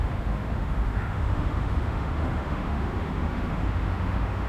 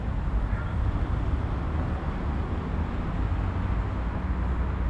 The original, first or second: second